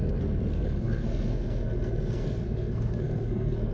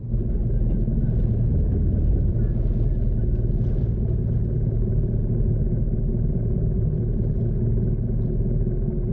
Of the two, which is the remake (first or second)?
first